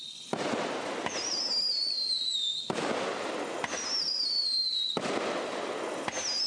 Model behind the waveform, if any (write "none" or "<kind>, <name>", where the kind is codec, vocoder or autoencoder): none